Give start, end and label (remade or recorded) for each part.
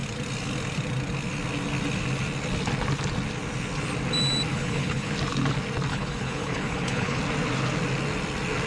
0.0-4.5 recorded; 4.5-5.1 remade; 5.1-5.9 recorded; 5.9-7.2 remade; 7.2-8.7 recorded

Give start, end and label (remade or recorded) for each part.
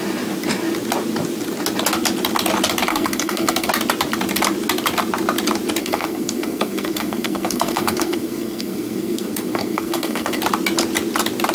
0.0-2.9 recorded; 2.9-3.7 remade; 3.7-5.8 recorded; 5.8-10.4 remade; 10.4-11.5 recorded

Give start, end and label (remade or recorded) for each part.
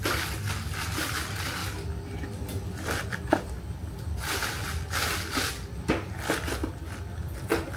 0.0-7.8 recorded